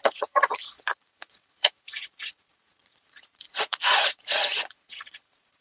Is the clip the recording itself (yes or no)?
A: no